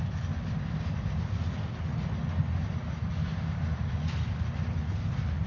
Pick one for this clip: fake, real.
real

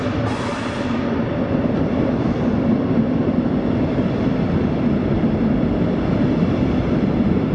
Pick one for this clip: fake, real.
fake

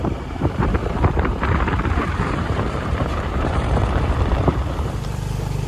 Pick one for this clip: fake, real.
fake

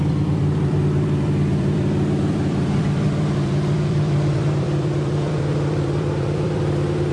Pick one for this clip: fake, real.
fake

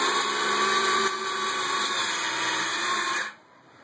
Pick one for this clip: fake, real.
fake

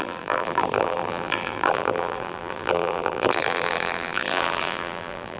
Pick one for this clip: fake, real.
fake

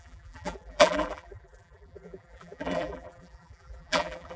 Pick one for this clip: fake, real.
fake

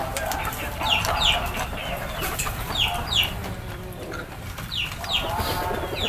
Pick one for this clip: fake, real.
fake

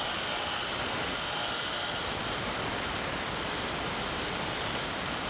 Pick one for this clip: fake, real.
real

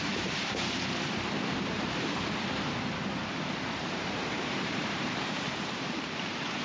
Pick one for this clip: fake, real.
fake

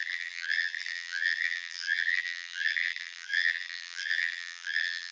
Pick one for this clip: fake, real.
fake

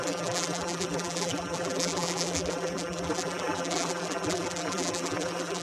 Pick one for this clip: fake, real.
fake